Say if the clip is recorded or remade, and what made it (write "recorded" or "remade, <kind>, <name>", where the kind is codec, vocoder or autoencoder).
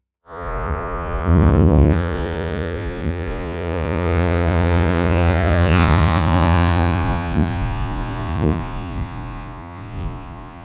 remade, vocoder, Vocos